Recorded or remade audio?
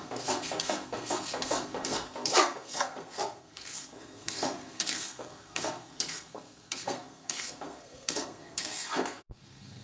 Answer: remade